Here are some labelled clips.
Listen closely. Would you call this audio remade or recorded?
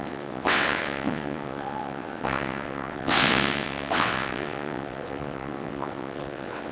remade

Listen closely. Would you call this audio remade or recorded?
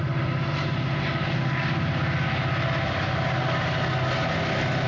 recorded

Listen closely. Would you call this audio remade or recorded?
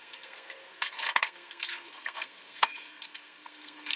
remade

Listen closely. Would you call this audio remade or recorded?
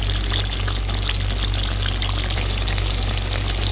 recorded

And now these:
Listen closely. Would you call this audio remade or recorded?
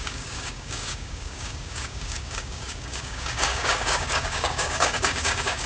remade